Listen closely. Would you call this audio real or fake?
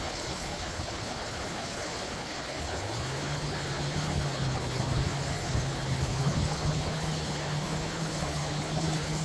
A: fake